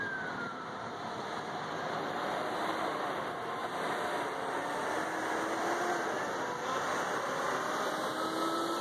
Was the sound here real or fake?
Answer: real